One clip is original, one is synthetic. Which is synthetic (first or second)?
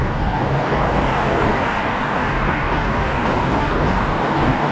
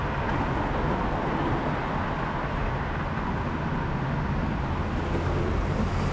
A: first